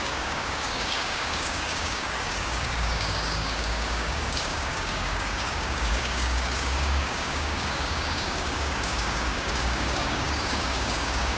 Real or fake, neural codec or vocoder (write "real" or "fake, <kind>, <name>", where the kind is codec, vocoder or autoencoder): fake, codec, DAC